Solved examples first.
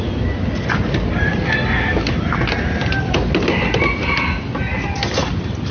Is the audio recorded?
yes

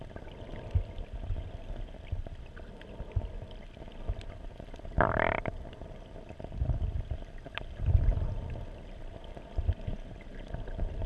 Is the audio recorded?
yes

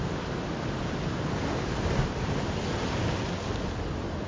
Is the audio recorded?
yes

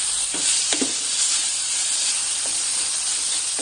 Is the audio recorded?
no